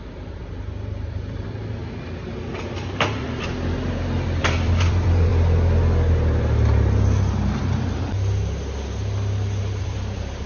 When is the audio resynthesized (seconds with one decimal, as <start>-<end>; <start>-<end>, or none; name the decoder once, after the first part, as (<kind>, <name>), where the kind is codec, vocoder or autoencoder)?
0.0-1.8 (vocoder, BigVGAN v2); 4.4-5.3; 9.8-10.5